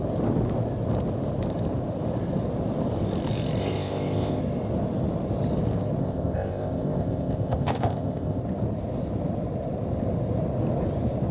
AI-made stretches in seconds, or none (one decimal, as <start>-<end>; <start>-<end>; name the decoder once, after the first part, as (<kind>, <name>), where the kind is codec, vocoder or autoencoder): 3.6-4.4 (codec, ZipCodec); 6.0-8.4